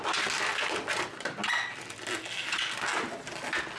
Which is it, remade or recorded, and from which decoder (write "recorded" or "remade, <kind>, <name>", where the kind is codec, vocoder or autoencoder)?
recorded